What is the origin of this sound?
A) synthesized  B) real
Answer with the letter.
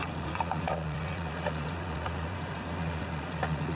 A